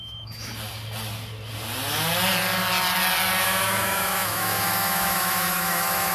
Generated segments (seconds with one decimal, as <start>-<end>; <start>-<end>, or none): 0.0-0.5; 3.4-6.1

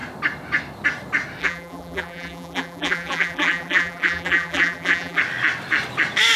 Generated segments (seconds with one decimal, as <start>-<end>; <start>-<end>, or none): 1.4-5.2

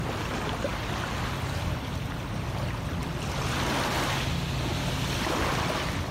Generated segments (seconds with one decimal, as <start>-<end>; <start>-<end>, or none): 0.7-1.3; 4.7-5.5

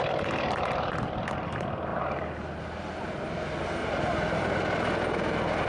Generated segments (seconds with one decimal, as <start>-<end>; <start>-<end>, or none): 1.9-2.6; 3.8-4.6

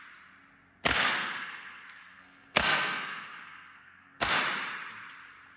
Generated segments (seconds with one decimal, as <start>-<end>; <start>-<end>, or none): 0.9-4.3

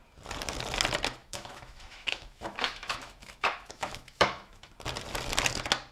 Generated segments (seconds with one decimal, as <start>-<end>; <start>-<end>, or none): 1.2-4.7

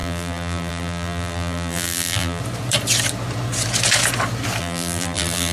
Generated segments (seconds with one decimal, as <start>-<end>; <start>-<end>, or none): 0.0-2.4; 4.6-5.5